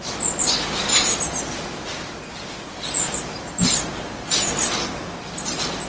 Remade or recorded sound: recorded